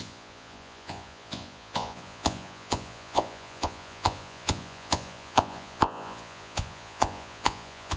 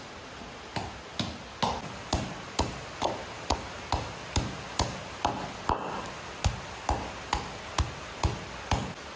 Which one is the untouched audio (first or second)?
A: second